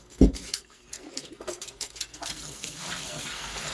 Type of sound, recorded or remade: remade